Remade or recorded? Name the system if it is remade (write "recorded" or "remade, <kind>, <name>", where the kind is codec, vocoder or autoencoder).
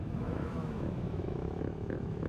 remade, autoencoder, DAC-VAE